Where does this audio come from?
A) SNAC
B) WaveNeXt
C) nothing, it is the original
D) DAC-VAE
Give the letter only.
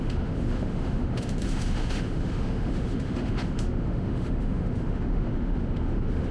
D